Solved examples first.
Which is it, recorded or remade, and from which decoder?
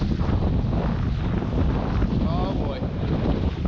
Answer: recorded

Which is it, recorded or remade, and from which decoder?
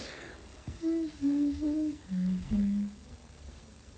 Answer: remade, codec, SNAC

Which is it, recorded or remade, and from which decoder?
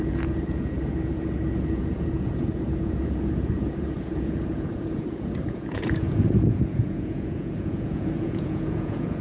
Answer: remade, vocoder, Vocos